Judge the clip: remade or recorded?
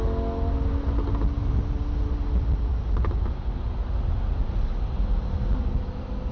recorded